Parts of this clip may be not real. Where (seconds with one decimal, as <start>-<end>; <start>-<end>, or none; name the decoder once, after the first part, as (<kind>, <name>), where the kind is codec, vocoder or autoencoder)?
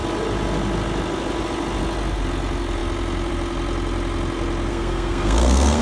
4.7-5.8 (codec, SNAC)